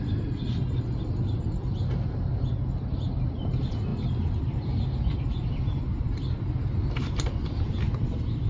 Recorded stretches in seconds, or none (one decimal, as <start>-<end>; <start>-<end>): 0.0-8.5